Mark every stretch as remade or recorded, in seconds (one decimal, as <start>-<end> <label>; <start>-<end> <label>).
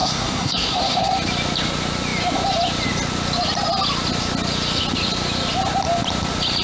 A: 0.0-1.1 remade; 1.1-6.6 recorded